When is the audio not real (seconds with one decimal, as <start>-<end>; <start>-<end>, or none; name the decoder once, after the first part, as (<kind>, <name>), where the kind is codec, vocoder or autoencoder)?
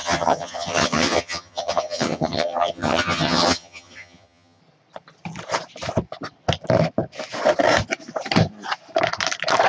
0.0-4.6 (vocoder, HiFi-GAN)